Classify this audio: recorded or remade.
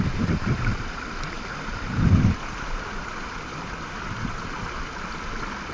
remade